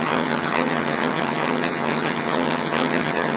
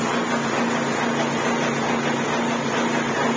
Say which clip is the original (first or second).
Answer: second